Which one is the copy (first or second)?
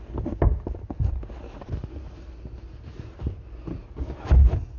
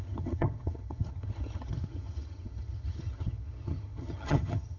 second